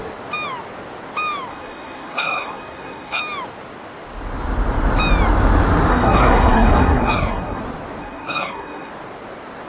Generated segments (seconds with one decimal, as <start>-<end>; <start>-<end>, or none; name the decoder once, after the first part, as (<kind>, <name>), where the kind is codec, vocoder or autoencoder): 1.5-3.2 (codec, SNAC); 5.9-7.6; 8.0-8.9